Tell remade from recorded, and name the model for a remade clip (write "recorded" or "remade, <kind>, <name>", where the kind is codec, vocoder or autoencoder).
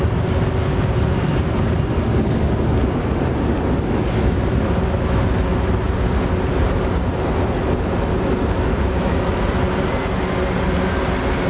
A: recorded